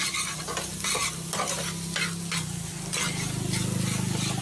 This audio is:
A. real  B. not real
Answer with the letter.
A